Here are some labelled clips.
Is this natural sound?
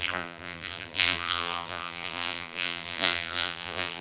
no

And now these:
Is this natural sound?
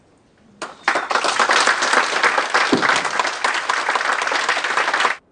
yes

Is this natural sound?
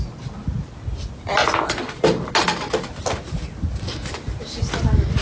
yes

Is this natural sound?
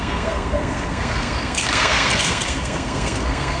no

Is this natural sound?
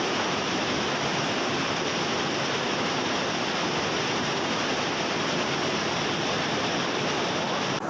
yes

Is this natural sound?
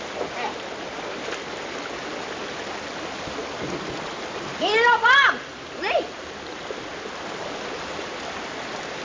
yes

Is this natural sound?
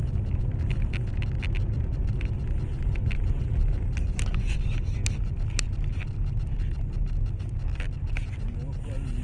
yes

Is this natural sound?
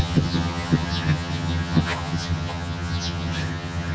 no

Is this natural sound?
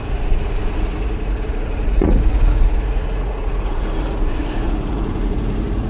no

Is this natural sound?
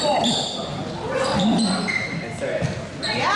yes